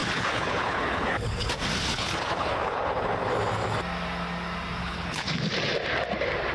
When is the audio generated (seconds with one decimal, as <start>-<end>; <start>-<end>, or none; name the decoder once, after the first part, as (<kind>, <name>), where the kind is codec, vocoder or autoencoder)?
0.0-1.5 (codec, HILCodec); 1.9-3.3; 4.8-5.3